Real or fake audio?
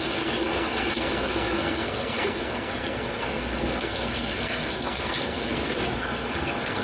fake